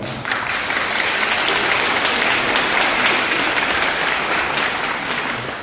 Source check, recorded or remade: recorded